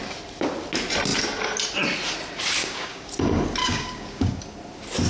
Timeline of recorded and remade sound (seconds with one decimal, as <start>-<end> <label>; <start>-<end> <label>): 0.0-2.6 recorded; 2.6-3.1 remade; 3.1-3.6 recorded; 3.6-4.4 remade; 4.4-5.1 recorded